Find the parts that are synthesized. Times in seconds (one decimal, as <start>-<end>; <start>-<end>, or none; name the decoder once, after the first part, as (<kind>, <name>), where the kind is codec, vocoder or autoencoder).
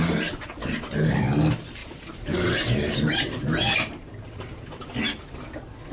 1.8-4.8 (vocoder, BigVGAN v2)